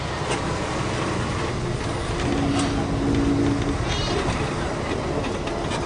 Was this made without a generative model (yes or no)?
yes